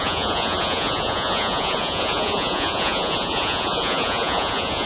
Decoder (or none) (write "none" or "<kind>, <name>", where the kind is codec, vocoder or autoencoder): vocoder, Vocos